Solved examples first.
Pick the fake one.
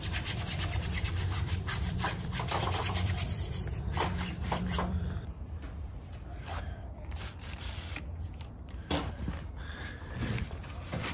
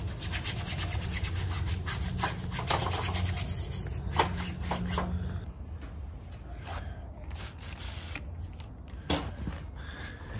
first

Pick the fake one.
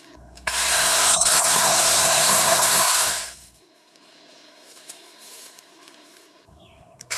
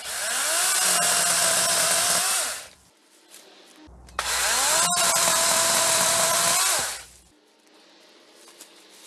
first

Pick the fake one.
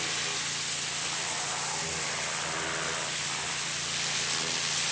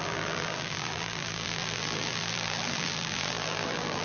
second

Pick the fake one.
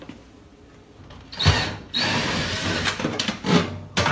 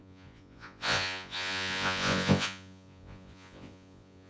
second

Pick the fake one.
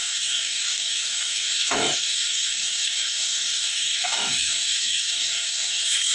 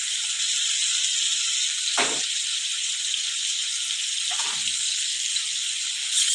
first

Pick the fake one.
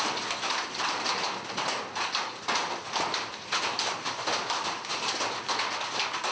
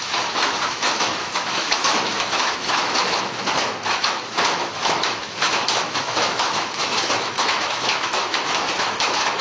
second